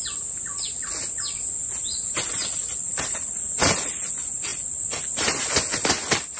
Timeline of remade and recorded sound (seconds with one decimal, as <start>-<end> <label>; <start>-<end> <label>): 0.0-2.3 recorded; 2.3-4.1 remade; 4.1-6.4 recorded